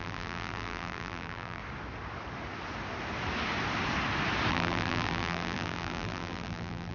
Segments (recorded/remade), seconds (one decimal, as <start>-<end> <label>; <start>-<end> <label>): 0.0-1.6 remade; 1.6-4.5 recorded; 4.5-6.9 remade